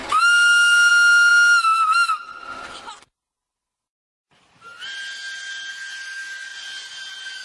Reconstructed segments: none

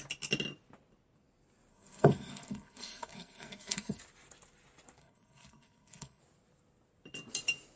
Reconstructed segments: 1.7-4.0 (codec, SNAC); 5.0-6.2

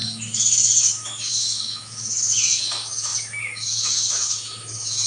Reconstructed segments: 0.0-5.1 (autoencoder, DAC-VAE)

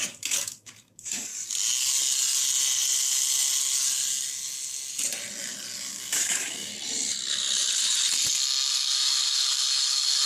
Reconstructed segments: 0.0-1.3 (codec, DAC); 5.9-6.7; 8.7-10.3